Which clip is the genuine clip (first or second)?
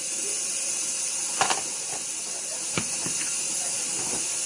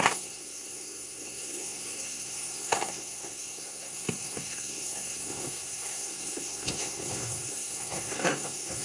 first